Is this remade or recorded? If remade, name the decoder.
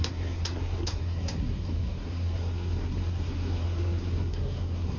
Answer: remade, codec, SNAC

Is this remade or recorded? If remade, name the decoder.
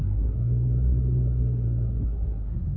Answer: remade, codec, SNAC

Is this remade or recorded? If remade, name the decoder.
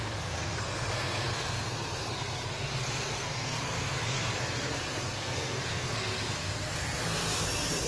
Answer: remade, codec, SNAC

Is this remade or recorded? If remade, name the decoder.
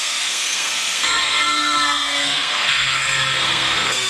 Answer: remade, codec, SNAC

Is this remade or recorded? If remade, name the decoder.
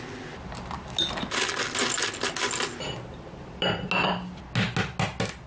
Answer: recorded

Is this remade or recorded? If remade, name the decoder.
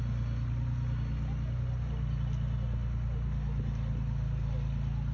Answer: recorded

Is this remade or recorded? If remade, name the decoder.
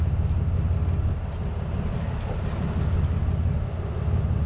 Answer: recorded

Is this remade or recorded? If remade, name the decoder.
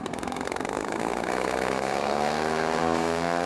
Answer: remade, codec, SNAC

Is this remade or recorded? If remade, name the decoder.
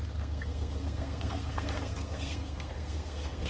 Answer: remade, codec, SNAC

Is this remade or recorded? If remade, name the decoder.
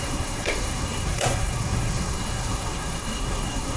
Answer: remade, codec, SNAC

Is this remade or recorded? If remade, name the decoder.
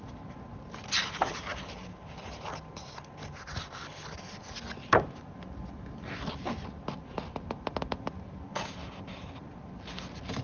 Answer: recorded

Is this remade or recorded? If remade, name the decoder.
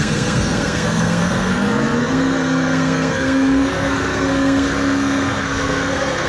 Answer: remade, codec, SNAC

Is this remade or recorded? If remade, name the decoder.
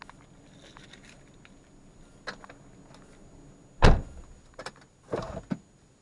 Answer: recorded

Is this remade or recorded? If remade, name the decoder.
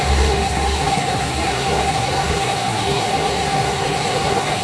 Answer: remade, codec, SNAC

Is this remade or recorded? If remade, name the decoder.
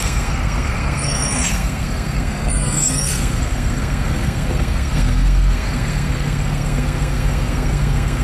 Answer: remade, codec, SNAC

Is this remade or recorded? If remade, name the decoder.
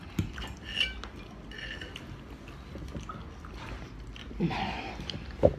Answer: recorded